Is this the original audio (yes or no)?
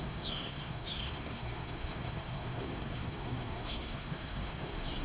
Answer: no